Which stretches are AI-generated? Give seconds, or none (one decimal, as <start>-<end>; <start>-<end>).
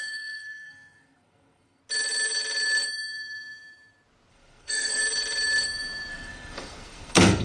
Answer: 0.0-1.8; 4.3-5.0; 6.1-7.4